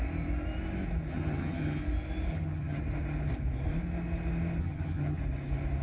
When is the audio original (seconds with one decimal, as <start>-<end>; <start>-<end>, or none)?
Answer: 0.0-1.1; 1.8-2.3; 2.8-4.6; 5.2-5.8